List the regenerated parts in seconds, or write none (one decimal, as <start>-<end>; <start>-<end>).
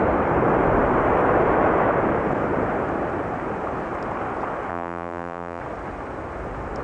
4.7-5.6